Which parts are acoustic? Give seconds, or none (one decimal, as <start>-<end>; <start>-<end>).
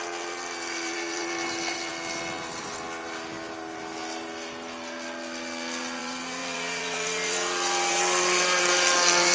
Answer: 1.9-6.0